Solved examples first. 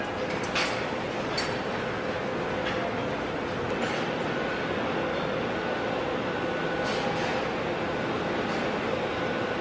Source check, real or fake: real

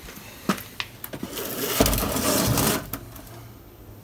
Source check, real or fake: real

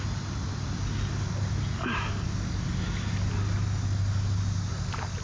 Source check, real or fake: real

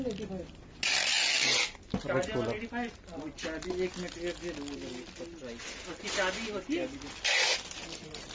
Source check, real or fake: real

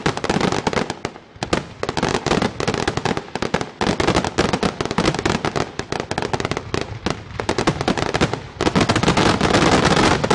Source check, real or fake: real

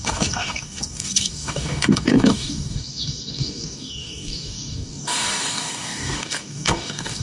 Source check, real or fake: fake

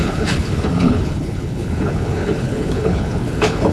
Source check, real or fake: fake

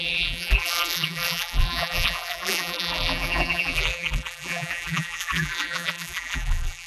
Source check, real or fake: fake